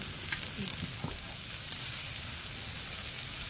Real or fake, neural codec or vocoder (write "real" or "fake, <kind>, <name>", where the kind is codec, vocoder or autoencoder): real